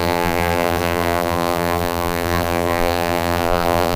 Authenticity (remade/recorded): remade